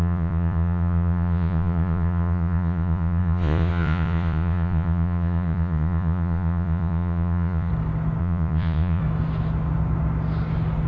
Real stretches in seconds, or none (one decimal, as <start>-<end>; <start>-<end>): 7.7-8.2; 9.0-10.9